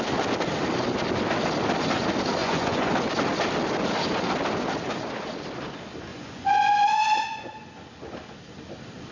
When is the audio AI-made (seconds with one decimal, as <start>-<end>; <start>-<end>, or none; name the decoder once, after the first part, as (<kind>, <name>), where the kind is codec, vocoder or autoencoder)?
2.4-2.9 (vocoder, Vocos); 6.1-7.7